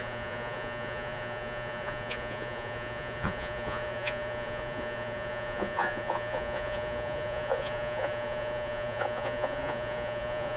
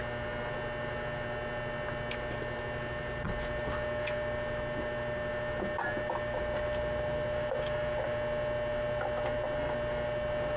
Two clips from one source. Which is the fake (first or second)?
first